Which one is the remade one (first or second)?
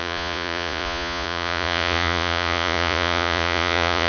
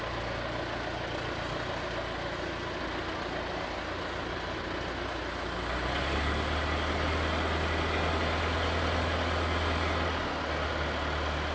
first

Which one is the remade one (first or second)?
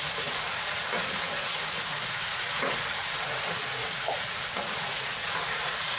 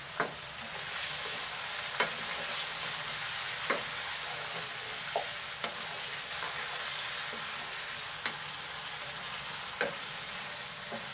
first